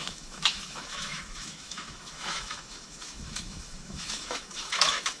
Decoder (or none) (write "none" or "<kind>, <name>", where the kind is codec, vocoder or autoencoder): autoencoder, DAC-VAE